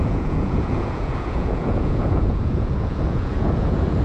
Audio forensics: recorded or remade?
remade